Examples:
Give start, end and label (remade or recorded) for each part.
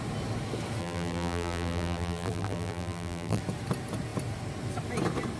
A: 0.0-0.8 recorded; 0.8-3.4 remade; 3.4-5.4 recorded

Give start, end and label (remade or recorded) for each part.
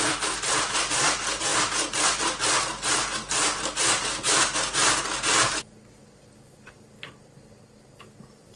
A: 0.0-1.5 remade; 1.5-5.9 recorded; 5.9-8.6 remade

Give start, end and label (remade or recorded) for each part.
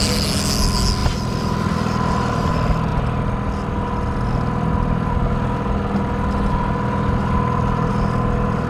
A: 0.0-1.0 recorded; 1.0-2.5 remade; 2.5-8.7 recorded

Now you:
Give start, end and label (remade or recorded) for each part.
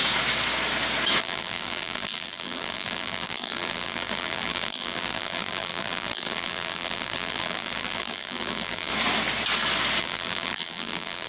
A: 0.0-1.2 recorded; 1.2-8.9 remade; 8.9-10.0 recorded; 10.0-11.3 remade